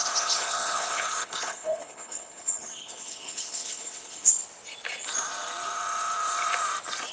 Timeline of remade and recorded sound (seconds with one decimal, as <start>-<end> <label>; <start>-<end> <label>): 0.0-4.3 remade; 4.3-7.1 recorded